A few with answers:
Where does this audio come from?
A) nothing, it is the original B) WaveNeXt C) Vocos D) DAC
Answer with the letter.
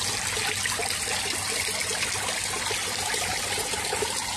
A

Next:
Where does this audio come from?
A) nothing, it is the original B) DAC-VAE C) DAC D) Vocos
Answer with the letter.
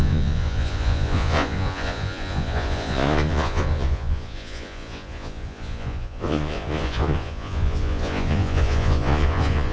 D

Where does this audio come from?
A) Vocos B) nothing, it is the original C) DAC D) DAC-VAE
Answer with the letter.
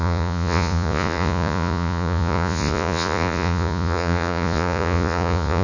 A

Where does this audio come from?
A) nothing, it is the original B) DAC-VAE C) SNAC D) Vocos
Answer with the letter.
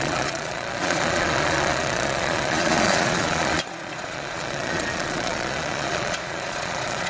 D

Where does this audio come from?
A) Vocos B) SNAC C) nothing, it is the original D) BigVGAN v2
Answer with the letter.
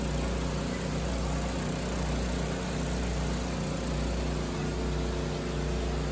C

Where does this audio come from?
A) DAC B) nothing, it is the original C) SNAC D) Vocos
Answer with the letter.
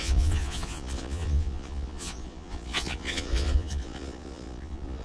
D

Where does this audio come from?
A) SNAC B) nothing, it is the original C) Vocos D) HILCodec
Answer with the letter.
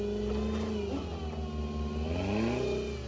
B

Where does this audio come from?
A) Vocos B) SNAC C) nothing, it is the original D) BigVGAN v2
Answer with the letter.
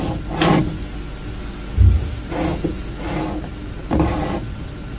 C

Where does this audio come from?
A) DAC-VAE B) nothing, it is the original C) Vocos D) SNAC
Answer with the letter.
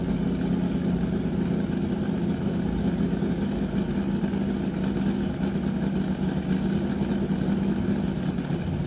B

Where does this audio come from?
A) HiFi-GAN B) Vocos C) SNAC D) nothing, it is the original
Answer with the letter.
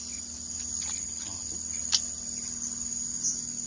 D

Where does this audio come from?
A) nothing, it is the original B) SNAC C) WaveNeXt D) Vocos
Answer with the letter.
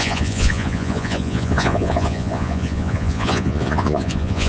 D